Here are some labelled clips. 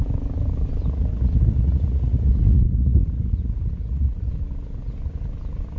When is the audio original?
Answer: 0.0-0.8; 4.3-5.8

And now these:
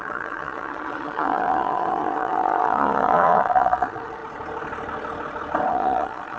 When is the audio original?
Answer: 4.2-5.7

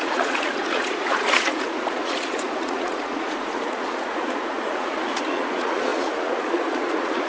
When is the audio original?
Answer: none

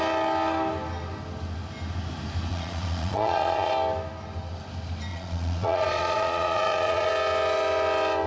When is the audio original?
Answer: 0.0-2.5; 3.7-5.1; 7.1-8.3

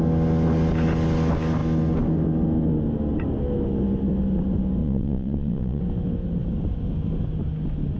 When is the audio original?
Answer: 0.0-4.8; 5.8-8.0

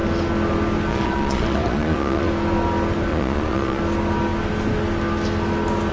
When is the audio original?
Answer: 0.0-0.9; 2.3-3.1; 3.8-5.9

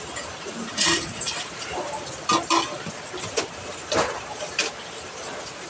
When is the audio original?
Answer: 0.0-0.7; 1.3-5.7

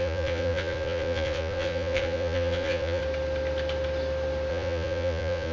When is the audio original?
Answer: 3.0-4.5